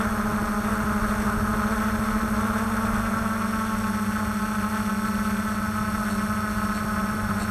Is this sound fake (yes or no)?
no